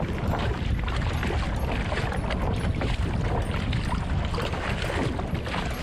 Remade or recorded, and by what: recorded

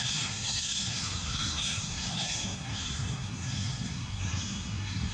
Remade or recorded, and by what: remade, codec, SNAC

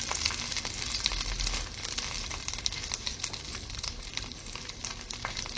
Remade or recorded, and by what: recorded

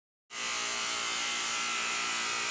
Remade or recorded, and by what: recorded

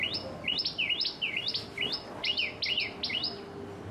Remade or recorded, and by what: recorded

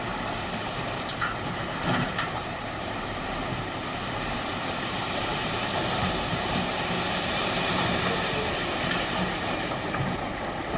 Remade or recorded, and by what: remade, vocoder, BigVGAN v2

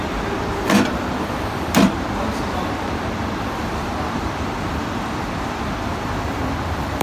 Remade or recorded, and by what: remade, vocoder, BigVGAN v2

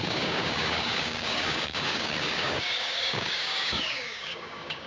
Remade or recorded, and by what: remade, codec, DAC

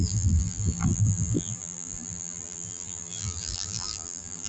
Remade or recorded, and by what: remade, vocoder, BigVGAN v2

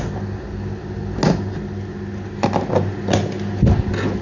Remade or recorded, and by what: recorded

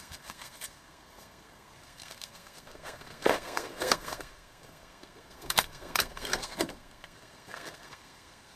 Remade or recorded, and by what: remade, codec, SNAC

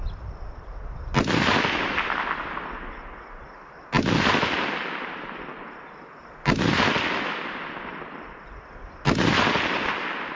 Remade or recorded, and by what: recorded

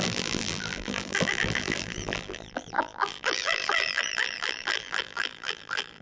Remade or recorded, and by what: remade, vocoder, BigVGAN v2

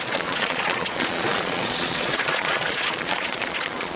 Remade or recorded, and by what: remade, vocoder, Vocos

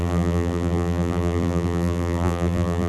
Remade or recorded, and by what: remade, vocoder, BigVGAN v2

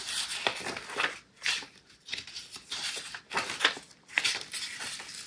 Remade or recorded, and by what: recorded